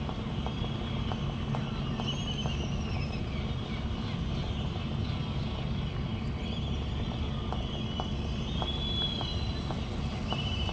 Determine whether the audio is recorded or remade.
recorded